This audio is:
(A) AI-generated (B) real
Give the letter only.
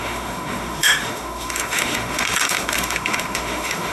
A